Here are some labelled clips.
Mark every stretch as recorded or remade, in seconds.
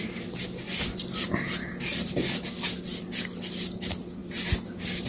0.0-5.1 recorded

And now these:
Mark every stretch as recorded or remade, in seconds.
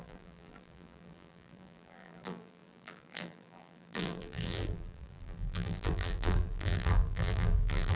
0.0-8.0 remade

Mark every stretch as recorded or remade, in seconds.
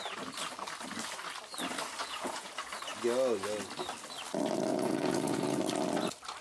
0.0-2.0 recorded; 2.0-2.5 remade; 2.5-4.7 recorded; 4.7-5.6 remade; 5.6-6.4 recorded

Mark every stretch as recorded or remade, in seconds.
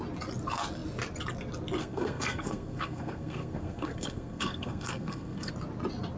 0.0-1.8 recorded; 1.8-5.5 remade; 5.5-6.2 recorded